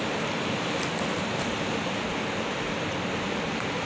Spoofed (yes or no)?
no